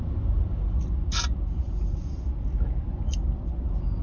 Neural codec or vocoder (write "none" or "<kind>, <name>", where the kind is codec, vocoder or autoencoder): none